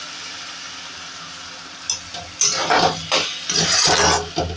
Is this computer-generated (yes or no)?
no